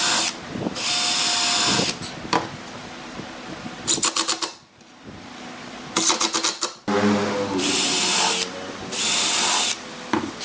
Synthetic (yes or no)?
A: no